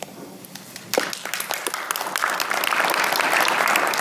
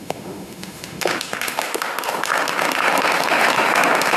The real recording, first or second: first